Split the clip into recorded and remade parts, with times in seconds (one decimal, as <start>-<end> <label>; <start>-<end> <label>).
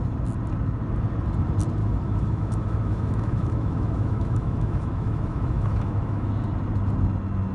0.0-1.8 recorded; 1.8-6.3 remade; 6.3-7.5 recorded